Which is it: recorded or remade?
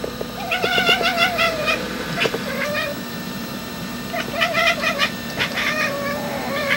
remade